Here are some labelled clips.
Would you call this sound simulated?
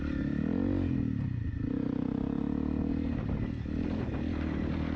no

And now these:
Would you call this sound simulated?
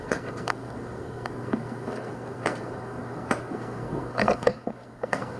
yes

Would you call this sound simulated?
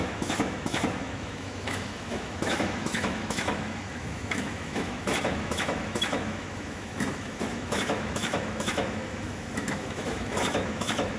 yes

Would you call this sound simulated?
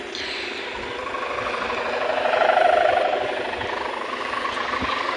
no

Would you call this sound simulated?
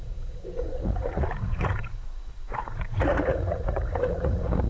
yes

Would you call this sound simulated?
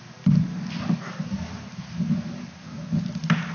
no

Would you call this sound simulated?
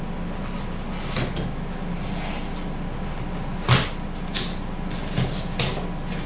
no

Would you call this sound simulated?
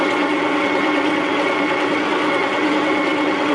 yes